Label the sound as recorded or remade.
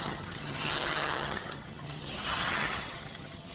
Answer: remade